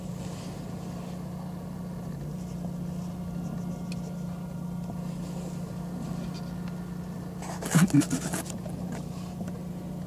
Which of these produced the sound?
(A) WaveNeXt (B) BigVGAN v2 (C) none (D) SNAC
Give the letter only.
C